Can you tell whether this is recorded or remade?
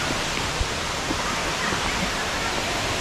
recorded